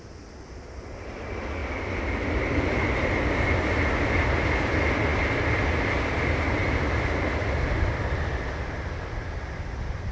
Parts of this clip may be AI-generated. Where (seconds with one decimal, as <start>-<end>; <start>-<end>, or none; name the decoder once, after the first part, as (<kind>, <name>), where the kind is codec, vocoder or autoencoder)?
none

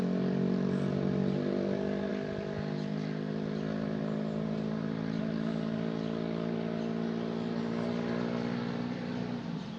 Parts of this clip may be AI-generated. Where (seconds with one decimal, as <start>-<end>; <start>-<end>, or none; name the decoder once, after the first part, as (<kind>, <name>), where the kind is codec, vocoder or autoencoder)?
none

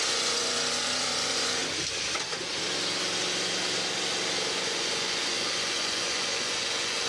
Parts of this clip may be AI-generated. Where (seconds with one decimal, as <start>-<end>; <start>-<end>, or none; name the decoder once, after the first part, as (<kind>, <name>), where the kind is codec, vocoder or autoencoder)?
0.0-1.6 (vocoder, Vocos); 4.5-7.1

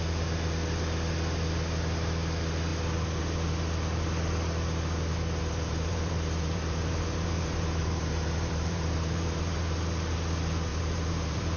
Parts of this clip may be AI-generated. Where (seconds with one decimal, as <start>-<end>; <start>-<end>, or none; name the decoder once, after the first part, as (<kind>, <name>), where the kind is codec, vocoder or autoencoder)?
5.4-9.6 (vocoder, BigVGAN v2); 10.7-11.6

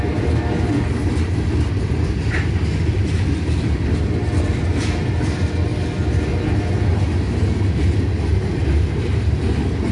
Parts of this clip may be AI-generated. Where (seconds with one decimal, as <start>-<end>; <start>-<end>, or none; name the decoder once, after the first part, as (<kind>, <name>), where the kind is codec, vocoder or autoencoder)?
none